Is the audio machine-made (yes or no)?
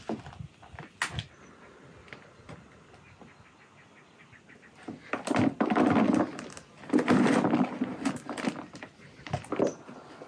no